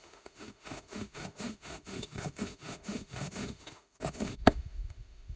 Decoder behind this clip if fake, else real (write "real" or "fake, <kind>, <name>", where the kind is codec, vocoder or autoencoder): fake, autoencoder, DAC-VAE